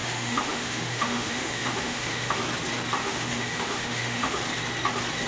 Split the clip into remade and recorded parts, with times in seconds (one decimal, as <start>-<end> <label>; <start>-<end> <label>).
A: 0.0-2.4 remade; 2.4-3.0 recorded; 3.0-4.4 remade; 4.4-5.3 recorded